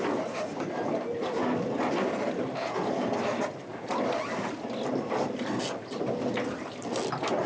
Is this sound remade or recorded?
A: recorded